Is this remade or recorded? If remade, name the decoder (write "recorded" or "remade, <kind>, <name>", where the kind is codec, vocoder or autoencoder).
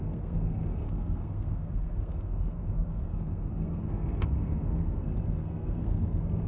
remade, codec, SNAC